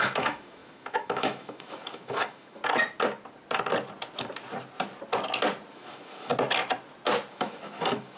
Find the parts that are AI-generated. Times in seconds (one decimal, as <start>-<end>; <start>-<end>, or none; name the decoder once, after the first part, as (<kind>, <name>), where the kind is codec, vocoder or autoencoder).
0.0-2.6 (autoencoder, DAC-VAE); 5.7-6.3; 7.3-8.2